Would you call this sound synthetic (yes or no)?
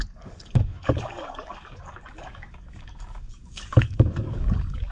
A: yes